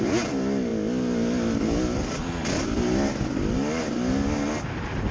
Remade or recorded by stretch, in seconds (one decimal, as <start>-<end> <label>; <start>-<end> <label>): 0.0-5.1 recorded